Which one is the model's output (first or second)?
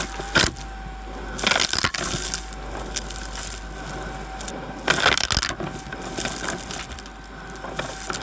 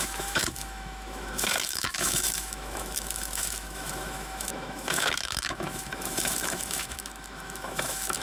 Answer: second